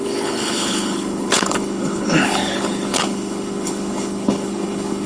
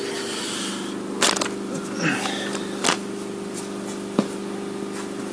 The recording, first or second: second